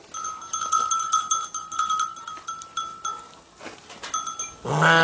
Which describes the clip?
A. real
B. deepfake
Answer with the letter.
A